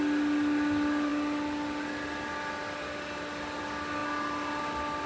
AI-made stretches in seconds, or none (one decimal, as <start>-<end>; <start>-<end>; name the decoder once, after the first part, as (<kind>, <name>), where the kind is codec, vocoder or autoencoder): none